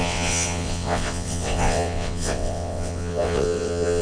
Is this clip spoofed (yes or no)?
yes